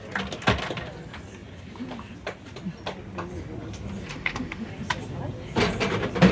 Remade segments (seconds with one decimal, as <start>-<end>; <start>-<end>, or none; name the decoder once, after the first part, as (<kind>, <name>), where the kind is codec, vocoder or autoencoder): 4.1-4.7 (autoencoder, DAC-VAE)